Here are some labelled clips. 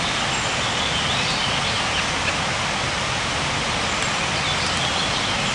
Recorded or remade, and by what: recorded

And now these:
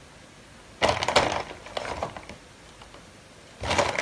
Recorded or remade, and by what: recorded